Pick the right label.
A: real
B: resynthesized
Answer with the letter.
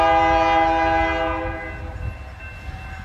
A